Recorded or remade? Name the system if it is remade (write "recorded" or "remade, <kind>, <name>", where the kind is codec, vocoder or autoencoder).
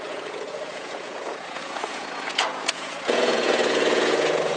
remade, vocoder, Vocos